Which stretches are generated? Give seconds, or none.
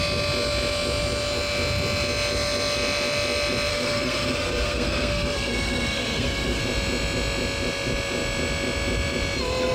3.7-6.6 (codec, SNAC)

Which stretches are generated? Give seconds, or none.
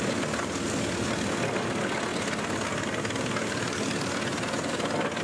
none